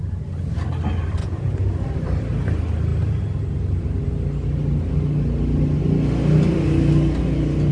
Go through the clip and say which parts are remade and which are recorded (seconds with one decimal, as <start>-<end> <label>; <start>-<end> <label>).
0.0-1.2 recorded; 1.2-1.7 remade; 1.7-7.7 recorded